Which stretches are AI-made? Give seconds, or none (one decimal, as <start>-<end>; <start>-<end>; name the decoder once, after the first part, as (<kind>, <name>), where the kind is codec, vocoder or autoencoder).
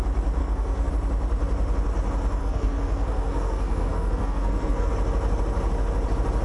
0.4-0.9 (codec, SNAC); 2.4-4.9